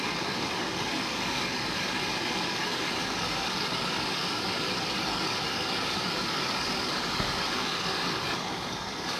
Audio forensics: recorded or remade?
remade